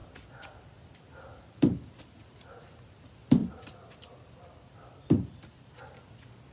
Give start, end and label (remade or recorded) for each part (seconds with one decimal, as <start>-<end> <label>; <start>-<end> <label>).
0.0-2.1 remade; 2.1-3.4 recorded; 3.4-5.8 remade; 5.8-6.5 recorded